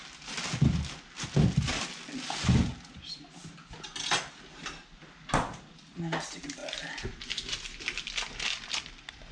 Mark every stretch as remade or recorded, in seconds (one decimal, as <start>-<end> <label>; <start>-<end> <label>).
0.0-9.3 recorded